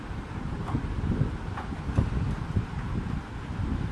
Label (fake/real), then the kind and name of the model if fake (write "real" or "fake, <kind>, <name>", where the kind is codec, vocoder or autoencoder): real